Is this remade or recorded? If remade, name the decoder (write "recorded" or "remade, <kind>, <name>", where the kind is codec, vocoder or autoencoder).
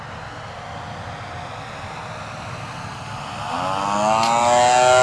recorded